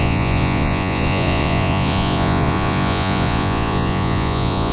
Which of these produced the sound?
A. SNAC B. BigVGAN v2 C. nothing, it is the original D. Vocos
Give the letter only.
D